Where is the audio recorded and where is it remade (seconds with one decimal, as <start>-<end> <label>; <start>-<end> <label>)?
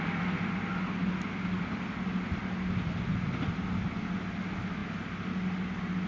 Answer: 0.0-6.1 recorded